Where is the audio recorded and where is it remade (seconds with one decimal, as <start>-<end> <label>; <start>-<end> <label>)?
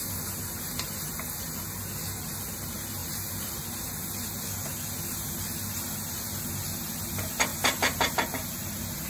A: 0.0-3.0 recorded; 3.0-3.5 remade; 3.5-7.5 recorded; 7.5-8.5 remade; 8.5-9.1 recorded